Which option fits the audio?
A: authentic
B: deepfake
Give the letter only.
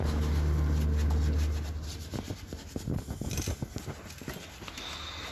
A